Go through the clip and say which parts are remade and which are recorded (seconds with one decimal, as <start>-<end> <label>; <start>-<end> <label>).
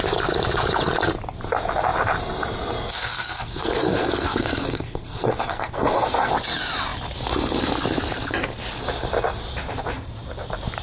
0.0-2.9 recorded; 2.9-6.3 remade; 6.3-10.8 recorded